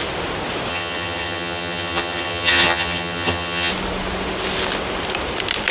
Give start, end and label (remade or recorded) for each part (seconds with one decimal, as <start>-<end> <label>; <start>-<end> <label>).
0.0-0.7 recorded; 0.7-3.7 remade; 3.7-5.7 recorded